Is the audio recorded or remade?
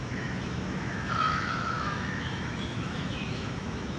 remade